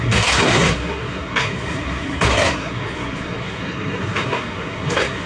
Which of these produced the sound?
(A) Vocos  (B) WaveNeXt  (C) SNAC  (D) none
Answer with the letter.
C